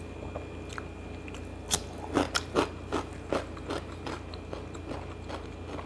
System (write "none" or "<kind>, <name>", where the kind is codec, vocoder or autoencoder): none